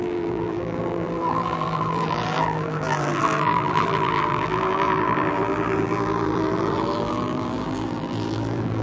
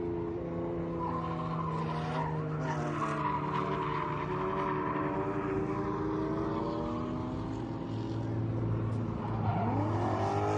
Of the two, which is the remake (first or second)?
first